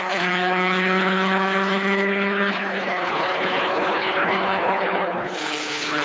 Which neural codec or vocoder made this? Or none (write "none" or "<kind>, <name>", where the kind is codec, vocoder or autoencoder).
codec, HILCodec